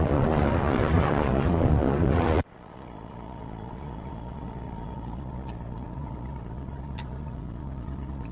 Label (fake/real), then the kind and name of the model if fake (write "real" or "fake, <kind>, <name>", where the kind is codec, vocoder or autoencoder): fake, vocoder, Vocos